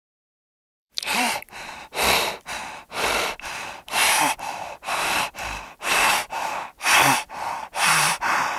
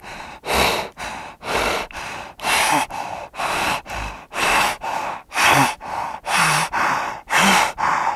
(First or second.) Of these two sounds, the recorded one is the second